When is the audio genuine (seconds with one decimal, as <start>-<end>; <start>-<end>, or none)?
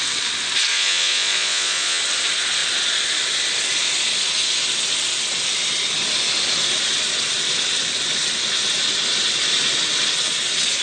0.0-0.7; 2.0-10.8